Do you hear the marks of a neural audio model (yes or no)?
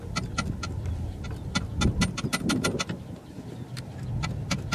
no